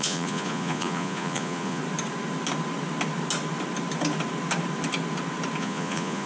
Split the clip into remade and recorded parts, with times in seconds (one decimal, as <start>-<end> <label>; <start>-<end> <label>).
0.0-1.8 remade; 1.8-5.6 recorded; 5.6-6.3 remade